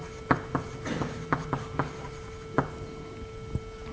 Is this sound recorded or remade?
recorded